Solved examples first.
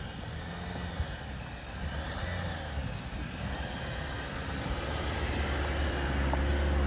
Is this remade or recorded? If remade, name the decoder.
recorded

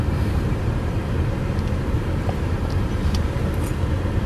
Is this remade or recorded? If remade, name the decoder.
remade, vocoder, BigVGAN v2